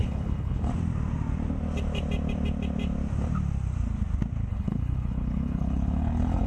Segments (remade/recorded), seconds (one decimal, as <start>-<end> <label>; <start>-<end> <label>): 0.0-0.7 remade; 0.7-4.5 recorded; 4.5-6.5 remade